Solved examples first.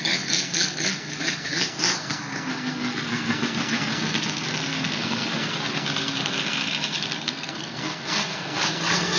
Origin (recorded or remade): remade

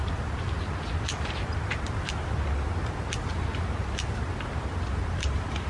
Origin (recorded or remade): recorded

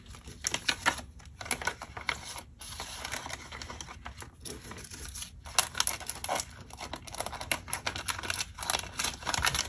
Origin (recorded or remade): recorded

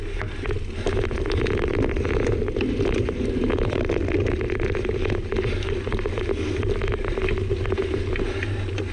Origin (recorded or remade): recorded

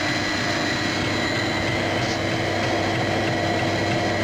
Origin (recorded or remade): recorded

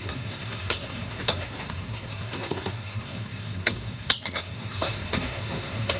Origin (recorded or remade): remade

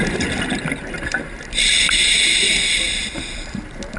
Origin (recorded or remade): recorded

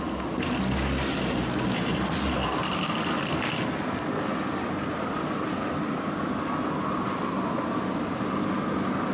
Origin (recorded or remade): recorded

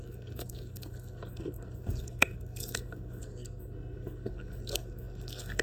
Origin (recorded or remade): remade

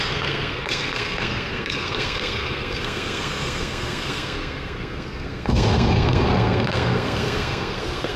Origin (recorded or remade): remade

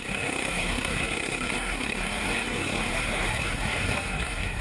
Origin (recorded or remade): remade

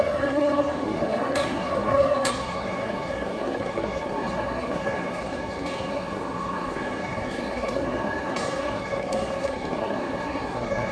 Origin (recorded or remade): remade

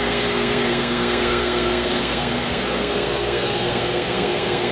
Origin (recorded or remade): remade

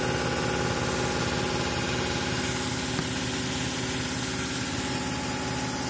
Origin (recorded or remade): recorded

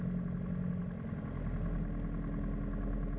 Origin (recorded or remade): recorded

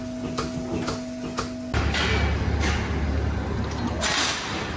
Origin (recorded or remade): recorded